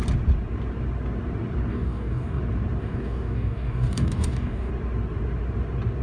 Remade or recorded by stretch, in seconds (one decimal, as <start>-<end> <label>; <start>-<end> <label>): 0.0-1.7 recorded; 1.7-2.4 remade; 2.4-2.8 recorded; 2.8-4.7 remade; 4.7-6.0 recorded